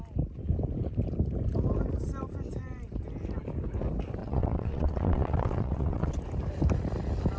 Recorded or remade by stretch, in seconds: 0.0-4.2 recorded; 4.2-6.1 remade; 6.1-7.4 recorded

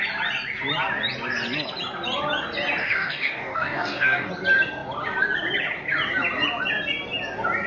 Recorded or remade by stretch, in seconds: 0.0-2.8 recorded; 2.8-4.3 remade; 4.3-7.7 recorded

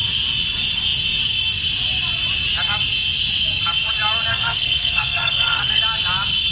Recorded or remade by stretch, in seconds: 0.0-4.3 recorded; 4.3-5.8 remade; 5.8-6.5 recorded

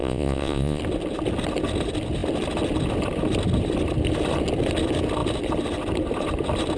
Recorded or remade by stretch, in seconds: 0.0-0.8 remade; 0.8-6.8 recorded

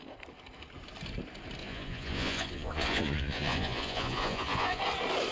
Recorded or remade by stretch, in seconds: 0.0-1.6 recorded; 1.6-4.8 remade; 4.8-5.3 recorded

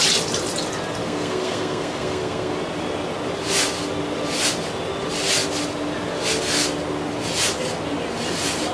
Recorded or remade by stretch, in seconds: 0.0-1.0 recorded; 1.0-2.5 remade; 2.5-8.7 recorded

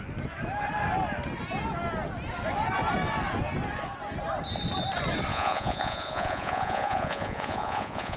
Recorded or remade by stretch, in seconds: 0.0-5.3 recorded; 5.3-8.2 remade

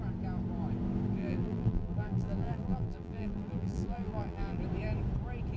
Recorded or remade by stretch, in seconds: 0.0-1.2 recorded; 1.2-4.6 remade; 4.6-5.6 recorded